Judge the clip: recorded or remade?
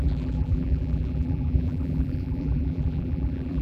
remade